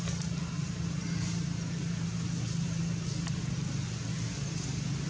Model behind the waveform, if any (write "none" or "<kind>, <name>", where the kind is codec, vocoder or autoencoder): none